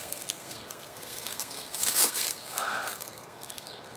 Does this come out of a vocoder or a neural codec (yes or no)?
yes